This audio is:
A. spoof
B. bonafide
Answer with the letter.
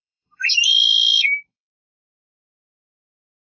A